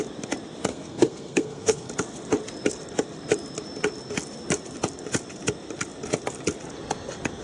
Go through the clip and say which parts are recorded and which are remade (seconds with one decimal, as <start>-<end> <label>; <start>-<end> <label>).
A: 0.0-0.7 recorded; 0.7-1.9 remade; 1.9-7.4 recorded

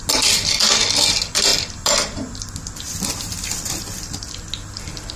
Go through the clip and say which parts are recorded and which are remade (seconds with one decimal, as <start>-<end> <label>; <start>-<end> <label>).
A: 0.0-1.5 recorded; 1.5-4.5 remade; 4.5-5.2 recorded

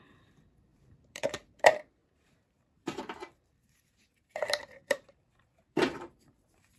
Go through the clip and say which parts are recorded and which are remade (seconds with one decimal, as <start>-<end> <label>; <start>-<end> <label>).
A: 0.0-6.8 remade

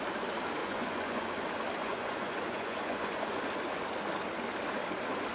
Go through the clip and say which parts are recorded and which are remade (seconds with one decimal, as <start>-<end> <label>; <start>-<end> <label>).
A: 0.0-0.6 recorded; 0.6-1.3 remade; 1.3-1.8 recorded; 1.8-3.4 remade; 3.4-5.3 recorded